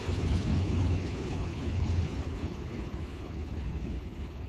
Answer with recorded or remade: remade